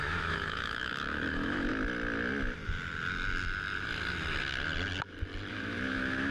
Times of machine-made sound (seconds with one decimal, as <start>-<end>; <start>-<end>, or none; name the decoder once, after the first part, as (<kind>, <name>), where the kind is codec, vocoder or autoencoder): 0.0-1.7 (autoencoder, DAC-VAE); 5.5-6.3